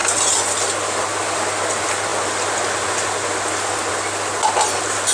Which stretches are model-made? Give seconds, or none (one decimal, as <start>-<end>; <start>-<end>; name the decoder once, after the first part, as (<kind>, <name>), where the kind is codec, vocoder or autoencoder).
none